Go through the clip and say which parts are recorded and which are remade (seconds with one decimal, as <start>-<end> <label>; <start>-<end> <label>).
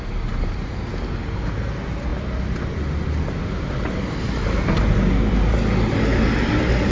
0.0-6.9 recorded